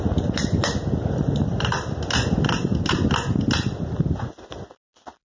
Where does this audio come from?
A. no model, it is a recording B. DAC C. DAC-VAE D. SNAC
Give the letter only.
A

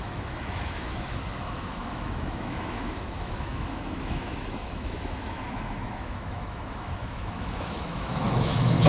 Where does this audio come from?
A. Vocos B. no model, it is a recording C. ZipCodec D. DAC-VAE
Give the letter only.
D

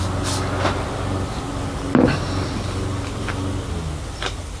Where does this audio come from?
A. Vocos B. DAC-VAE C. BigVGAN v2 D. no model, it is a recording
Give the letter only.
D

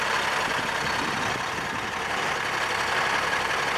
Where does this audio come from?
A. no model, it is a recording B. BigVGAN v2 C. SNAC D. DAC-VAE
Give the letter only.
A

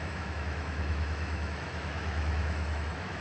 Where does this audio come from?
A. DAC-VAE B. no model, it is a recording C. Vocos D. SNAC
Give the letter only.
A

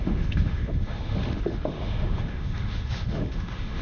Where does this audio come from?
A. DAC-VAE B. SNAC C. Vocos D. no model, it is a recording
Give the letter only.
A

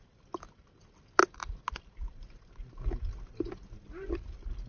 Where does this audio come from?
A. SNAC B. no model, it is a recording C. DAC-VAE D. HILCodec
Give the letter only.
B